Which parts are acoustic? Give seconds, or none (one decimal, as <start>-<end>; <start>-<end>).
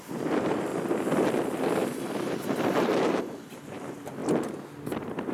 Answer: 0.7-2.1; 4.2-5.3